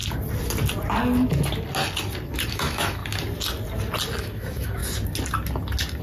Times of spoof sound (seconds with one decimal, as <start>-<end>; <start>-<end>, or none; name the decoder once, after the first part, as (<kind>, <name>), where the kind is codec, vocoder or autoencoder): 2.5-3.0 (autoencoder, DAC-VAE); 4.2-4.8